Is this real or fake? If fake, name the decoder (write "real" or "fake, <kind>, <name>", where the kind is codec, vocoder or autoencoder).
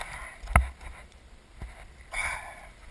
real